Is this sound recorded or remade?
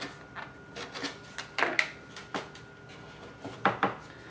recorded